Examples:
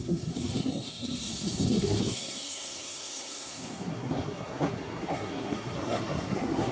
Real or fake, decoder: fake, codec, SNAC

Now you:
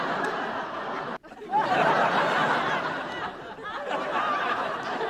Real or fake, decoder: real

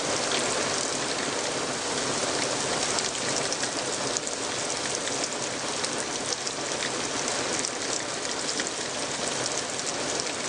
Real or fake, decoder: real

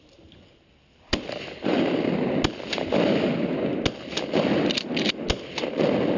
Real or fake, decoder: real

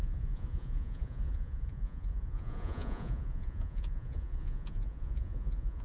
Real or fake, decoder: fake, vocoder, Vocos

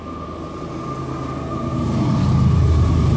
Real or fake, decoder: real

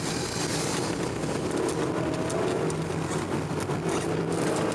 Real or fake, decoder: real